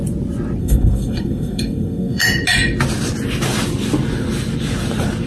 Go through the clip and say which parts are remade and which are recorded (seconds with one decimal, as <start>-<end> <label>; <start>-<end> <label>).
0.0-0.6 recorded; 0.6-2.2 remade; 2.2-5.3 recorded